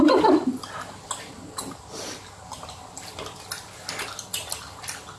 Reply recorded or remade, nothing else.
recorded